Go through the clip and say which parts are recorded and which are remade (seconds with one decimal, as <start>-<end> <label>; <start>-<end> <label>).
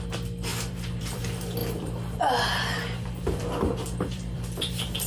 0.0-0.5 recorded; 0.5-1.2 remade; 1.2-1.6 recorded; 1.6-5.1 remade